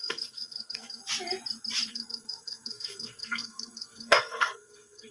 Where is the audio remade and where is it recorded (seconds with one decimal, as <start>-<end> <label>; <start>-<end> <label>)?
0.0-1.0 remade; 1.0-1.9 recorded; 1.9-5.1 remade

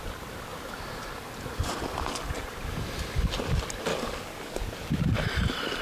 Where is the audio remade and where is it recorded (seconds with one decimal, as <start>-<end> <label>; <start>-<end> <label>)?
0.0-3.9 recorded; 3.9-4.6 remade; 4.6-5.8 recorded